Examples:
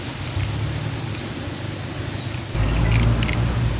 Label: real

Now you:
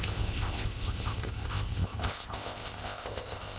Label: fake